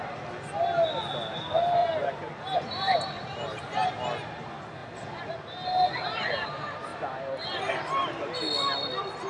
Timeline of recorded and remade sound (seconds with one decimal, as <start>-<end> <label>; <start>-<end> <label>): 0.0-1.8 recorded; 1.8-3.9 remade; 3.9-6.9 recorded; 6.9-8.3 remade; 8.3-9.3 recorded